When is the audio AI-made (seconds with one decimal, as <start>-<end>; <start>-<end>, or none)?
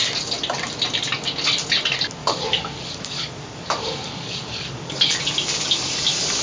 2.2-5.1